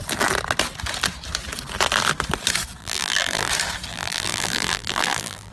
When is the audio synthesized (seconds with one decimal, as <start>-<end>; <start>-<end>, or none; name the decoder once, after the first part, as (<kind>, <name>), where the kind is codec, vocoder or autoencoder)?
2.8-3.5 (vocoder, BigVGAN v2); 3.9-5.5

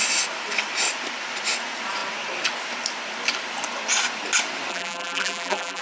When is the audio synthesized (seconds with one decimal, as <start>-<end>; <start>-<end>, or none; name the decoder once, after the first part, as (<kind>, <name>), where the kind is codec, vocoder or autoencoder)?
4.7-5.8 (vocoder, BigVGAN v2)

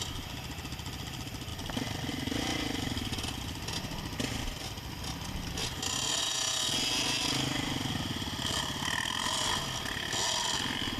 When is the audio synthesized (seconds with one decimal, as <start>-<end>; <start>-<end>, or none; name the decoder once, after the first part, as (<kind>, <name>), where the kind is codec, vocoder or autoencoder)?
none

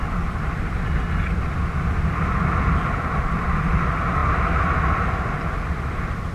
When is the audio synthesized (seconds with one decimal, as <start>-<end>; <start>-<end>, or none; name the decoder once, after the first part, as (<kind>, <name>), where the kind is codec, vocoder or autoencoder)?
none

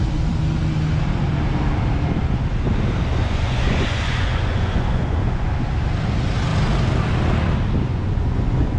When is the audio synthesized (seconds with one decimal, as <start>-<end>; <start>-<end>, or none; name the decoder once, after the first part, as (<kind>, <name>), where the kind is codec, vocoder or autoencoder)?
3.1-5.5 (vocoder, Vocos); 7.9-8.8

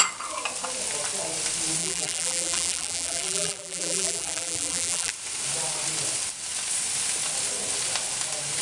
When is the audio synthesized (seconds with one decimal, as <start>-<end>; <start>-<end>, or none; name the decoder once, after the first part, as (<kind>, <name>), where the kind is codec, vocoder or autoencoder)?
1.8-5.1 (vocoder, BigVGAN v2)

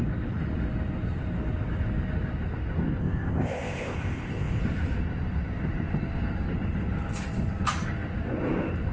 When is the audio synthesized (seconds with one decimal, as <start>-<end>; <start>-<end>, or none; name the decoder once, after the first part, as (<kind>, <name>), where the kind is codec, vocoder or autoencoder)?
3.0-4.6 (codec, ZipCodec)